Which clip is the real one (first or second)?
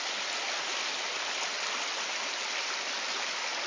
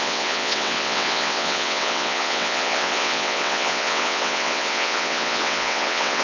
first